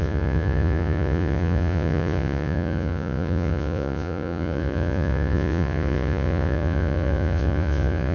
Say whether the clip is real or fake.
fake